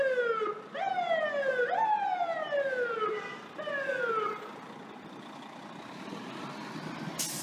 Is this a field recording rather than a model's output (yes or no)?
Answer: yes